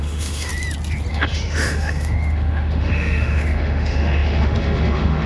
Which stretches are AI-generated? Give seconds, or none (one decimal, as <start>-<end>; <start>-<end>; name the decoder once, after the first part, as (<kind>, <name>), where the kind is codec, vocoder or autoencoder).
0.0-0.5 (autoencoder, DAC-VAE); 1.1-5.3